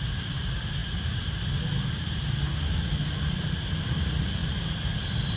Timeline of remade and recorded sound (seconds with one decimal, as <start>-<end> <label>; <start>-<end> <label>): 0.0-5.4 recorded